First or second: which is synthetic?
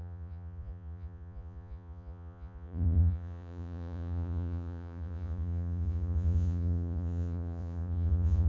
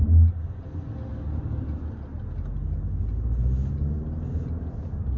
first